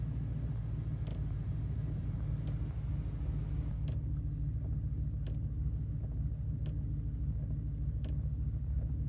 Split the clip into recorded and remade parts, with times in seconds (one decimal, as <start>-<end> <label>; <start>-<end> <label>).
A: 0.0-1.1 recorded; 1.1-2.3 remade; 2.3-9.1 recorded